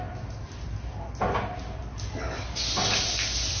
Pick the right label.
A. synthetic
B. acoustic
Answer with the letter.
B